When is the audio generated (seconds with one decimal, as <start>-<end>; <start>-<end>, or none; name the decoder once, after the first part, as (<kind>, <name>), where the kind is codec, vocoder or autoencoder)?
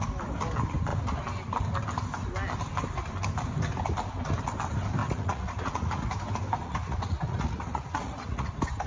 5.0-6.1 (vocoder, Vocos); 6.6-8.5